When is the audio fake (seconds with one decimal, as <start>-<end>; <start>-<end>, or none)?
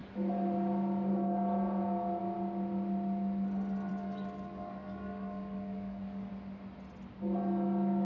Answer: 3.9-6.3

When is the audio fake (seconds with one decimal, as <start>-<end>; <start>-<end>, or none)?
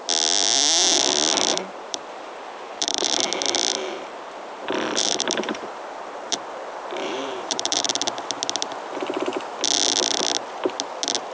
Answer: 1.5-3.2; 3.7-7.9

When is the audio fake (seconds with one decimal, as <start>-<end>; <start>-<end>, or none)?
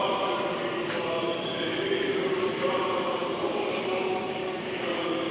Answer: 1.7-2.4; 4.4-5.3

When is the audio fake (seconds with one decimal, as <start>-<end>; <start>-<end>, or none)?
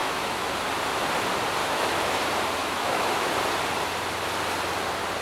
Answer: 0.0-0.5; 1.6-2.2; 2.6-3.3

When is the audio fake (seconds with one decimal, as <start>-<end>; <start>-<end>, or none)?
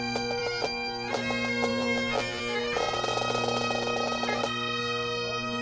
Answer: 1.7-2.4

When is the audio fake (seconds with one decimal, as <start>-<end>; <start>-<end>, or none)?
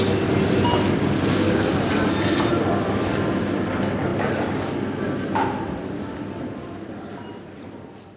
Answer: none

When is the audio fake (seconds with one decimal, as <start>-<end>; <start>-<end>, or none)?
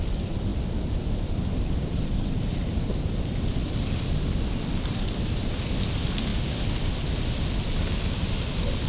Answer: 0.0-6.3; 7.6-8.9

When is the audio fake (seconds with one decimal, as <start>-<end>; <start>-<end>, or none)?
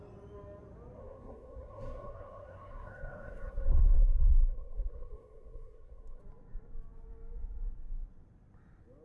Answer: 1.0-6.2